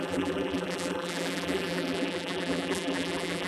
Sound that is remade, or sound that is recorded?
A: remade